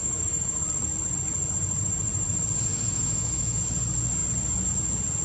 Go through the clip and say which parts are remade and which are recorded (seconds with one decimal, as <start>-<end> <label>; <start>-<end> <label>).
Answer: 0.0-0.6 remade; 0.6-2.7 recorded; 2.7-3.6 remade; 3.6-5.2 recorded